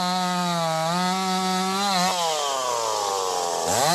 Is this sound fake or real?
real